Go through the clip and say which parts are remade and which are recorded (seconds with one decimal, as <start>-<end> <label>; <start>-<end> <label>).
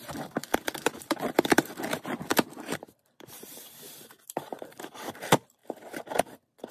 0.0-5.6 remade; 5.6-6.2 recorded; 6.2-6.7 remade